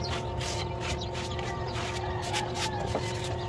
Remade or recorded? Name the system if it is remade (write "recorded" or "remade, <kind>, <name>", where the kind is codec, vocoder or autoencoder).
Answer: recorded